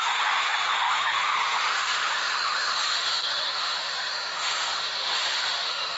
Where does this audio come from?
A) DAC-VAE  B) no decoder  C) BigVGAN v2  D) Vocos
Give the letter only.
A